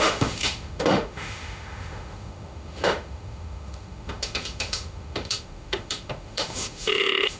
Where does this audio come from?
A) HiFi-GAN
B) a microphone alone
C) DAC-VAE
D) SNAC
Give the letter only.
C